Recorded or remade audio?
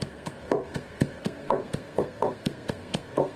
remade